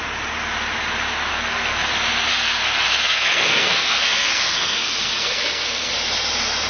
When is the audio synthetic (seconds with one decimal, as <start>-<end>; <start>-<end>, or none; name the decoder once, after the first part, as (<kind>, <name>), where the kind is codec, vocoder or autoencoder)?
1.3-1.9 (codec, SNAC); 2.3-5.9